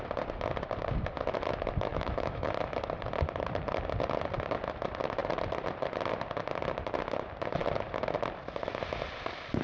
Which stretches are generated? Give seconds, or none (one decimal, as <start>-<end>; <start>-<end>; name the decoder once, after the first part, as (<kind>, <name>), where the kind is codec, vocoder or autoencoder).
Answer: 1.9-2.5 (autoencoder, DAC-VAE)